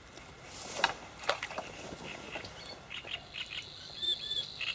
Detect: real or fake real